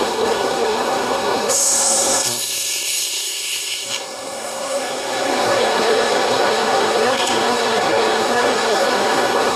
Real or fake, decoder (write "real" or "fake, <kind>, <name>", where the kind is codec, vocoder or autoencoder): fake, codec, SNAC